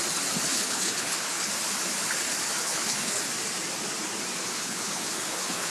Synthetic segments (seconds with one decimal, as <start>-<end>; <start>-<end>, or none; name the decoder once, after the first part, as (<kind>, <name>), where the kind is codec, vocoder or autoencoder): 0.5-1.5 (codec, HILCodec); 2.6-3.2; 4.4-5.7

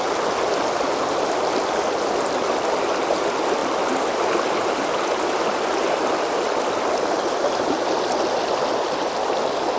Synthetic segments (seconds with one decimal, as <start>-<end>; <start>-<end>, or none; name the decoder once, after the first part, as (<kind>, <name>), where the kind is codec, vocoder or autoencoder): none